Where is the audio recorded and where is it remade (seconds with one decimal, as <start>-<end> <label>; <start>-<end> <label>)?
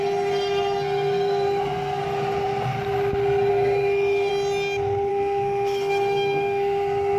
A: 0.0-2.0 remade; 2.0-3.5 recorded; 3.5-4.3 remade; 4.3-5.1 recorded; 5.1-7.2 remade